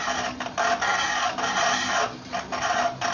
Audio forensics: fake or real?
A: real